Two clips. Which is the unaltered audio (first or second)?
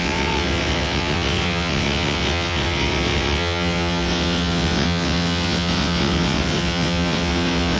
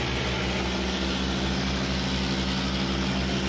second